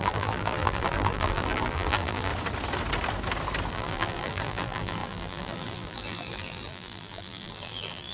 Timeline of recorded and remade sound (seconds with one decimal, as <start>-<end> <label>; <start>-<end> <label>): 0.0-2.3 remade; 2.3-3.7 recorded; 3.7-8.1 remade